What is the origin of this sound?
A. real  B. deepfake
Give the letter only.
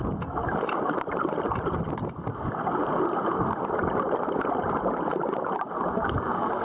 A